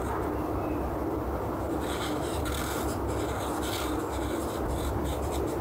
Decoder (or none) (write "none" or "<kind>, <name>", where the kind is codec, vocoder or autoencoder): none